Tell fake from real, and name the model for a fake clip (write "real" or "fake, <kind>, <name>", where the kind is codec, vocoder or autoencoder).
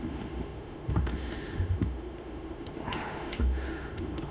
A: fake, autoencoder, DAC-VAE